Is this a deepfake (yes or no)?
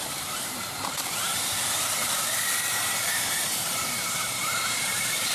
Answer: yes